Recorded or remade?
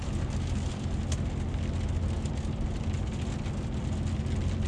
recorded